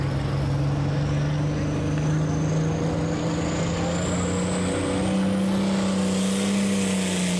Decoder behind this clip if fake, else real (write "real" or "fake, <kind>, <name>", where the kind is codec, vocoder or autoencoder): real